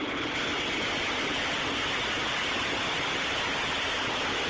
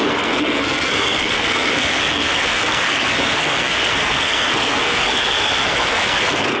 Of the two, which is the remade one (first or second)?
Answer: second